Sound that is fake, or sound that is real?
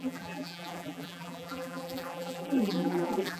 fake